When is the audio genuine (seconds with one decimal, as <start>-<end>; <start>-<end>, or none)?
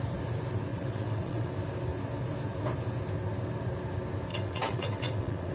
0.0-0.7; 1.5-4.3